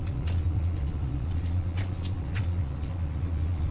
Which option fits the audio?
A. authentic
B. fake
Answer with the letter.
B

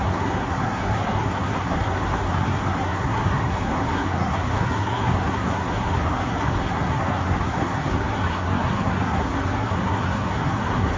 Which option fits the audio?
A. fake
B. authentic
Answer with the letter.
A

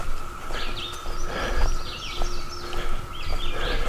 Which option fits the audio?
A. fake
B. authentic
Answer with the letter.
B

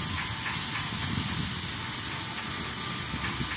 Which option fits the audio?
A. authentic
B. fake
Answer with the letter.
A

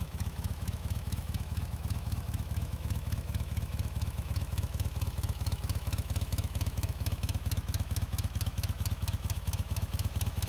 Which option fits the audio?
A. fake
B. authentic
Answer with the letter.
A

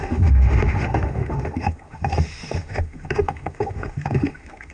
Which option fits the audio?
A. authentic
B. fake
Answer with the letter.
B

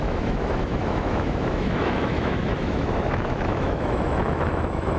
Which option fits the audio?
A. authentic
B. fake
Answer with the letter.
B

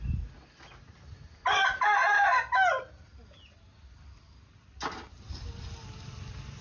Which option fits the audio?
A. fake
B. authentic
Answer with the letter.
B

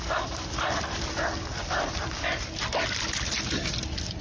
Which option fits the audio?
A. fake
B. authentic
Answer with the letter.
A